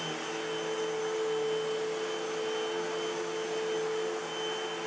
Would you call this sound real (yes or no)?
yes